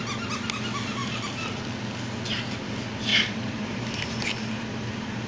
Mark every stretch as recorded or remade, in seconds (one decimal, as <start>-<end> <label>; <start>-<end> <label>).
0.0-1.0 recorded; 1.0-1.6 remade; 1.6-3.1 recorded; 3.1-4.6 remade; 4.6-5.3 recorded